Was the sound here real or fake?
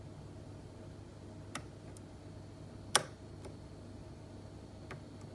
real